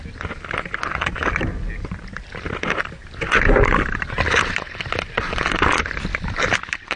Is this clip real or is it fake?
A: real